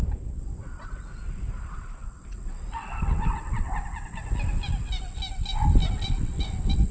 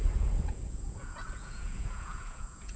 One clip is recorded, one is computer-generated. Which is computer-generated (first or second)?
second